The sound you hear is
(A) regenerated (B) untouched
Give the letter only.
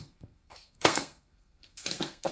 A